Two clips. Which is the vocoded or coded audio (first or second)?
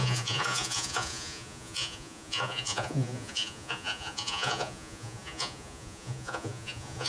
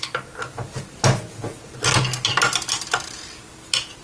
first